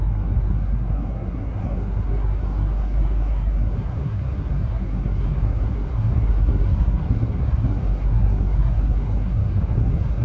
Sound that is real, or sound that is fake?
fake